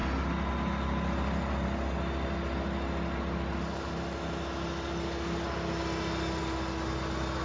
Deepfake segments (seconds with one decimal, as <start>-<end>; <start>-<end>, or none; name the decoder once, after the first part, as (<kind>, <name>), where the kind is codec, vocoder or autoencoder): none